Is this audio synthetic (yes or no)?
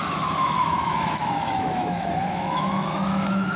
yes